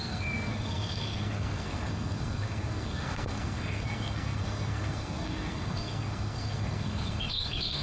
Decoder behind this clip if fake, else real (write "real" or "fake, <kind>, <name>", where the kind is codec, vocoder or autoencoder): fake, codec, SNAC